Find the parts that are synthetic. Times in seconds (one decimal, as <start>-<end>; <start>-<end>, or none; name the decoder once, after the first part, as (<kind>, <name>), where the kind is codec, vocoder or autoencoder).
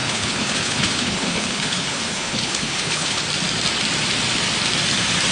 0.0-3.2 (codec, HILCodec)